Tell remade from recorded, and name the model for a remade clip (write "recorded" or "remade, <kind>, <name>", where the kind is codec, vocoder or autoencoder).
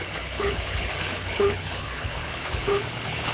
remade, codec, HILCodec